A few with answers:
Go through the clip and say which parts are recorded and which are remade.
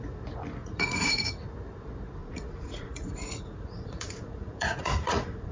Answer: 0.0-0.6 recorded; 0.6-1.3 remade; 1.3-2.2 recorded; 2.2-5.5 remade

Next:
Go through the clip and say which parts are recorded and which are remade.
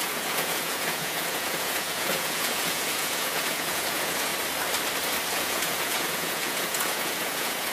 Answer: 0.0-4.3 remade; 4.3-5.3 recorded; 5.3-7.7 remade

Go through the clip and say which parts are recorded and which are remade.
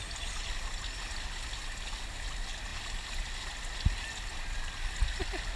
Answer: 0.0-5.6 recorded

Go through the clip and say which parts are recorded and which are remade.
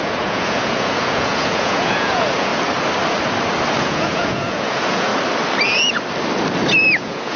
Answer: 0.0-2.5 remade; 2.5-3.8 recorded; 3.8-5.1 remade; 5.1-7.0 recorded; 7.0-7.4 remade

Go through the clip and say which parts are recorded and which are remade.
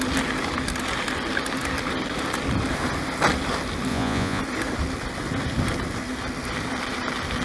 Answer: 0.0-3.9 recorded; 3.9-4.4 remade; 4.4-7.4 recorded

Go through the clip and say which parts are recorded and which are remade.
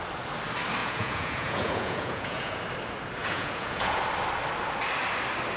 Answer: 0.0-0.8 recorded; 0.8-2.6 remade; 2.6-3.2 recorded; 3.2-4.0 remade; 4.0-5.6 recorded